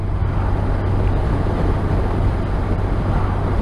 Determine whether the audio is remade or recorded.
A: recorded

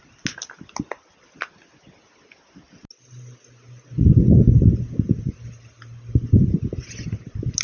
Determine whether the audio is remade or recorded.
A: recorded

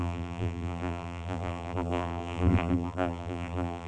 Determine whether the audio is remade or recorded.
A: remade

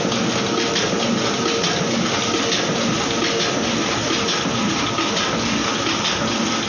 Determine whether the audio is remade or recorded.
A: recorded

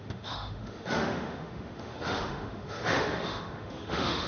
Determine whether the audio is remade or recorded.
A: remade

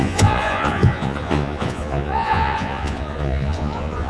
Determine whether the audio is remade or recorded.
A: remade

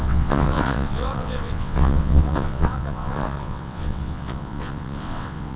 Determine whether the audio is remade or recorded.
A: remade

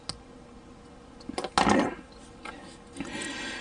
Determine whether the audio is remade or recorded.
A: recorded